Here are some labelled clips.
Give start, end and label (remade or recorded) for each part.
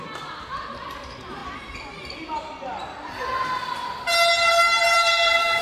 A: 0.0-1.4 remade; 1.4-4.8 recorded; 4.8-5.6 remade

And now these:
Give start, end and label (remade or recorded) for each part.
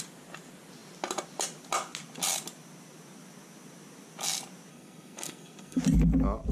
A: 0.0-4.7 recorded; 4.7-5.8 remade; 5.8-6.5 recorded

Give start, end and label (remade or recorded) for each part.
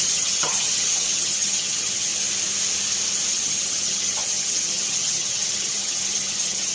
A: 0.0-2.1 remade; 2.1-3.3 recorded; 3.3-6.7 remade